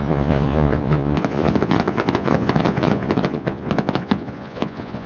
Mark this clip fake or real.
fake